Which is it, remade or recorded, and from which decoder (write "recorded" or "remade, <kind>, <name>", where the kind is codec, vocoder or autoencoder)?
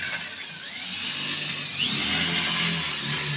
recorded